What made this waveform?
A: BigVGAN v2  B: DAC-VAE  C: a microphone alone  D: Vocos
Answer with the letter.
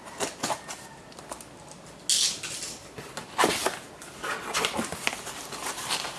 C